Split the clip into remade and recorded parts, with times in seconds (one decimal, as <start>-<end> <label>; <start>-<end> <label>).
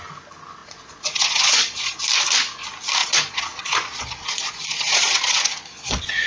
0.0-0.6 recorded; 0.6-2.0 remade; 2.0-3.0 recorded; 3.0-6.3 remade